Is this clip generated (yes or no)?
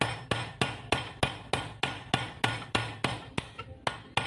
no